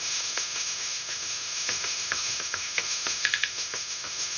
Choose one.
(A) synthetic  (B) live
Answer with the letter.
A